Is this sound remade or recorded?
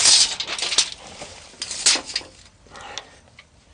recorded